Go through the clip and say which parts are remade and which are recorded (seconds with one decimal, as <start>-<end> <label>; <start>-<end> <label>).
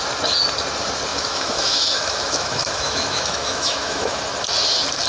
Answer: 0.0-1.1 recorded; 1.1-4.2 remade; 4.2-5.1 recorded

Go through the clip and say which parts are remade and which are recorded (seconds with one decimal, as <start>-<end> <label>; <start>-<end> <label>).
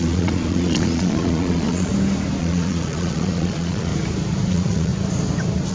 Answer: 0.0-1.9 remade; 1.9-2.4 recorded; 2.4-3.9 remade; 3.9-4.5 recorded; 4.5-4.9 remade; 4.9-5.7 recorded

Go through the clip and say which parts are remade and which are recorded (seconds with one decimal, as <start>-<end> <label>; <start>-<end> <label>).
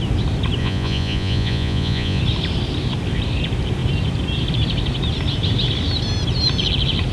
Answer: 0.0-0.6 recorded; 0.6-2.2 remade; 2.2-7.1 recorded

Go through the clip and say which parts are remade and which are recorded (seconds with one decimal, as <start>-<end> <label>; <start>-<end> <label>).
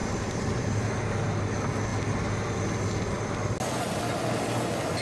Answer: 0.0-0.9 remade; 0.9-5.0 recorded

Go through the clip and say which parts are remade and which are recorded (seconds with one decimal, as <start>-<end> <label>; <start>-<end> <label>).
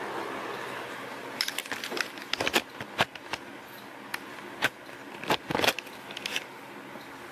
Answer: 0.0-7.3 recorded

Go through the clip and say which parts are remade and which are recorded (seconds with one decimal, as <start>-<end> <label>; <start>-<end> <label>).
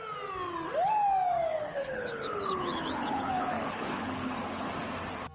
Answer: 0.0-1.5 recorded; 1.5-4.7 remade; 4.7-5.3 recorded